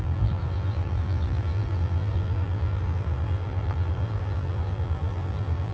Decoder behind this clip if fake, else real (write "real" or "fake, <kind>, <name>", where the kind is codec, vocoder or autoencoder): fake, vocoder, BigVGAN v2